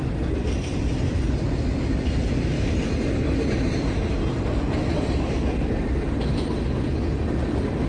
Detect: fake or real real